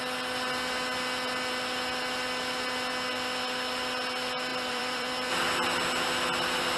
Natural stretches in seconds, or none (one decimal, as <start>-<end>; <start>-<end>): 0.0-4.5; 5.5-6.8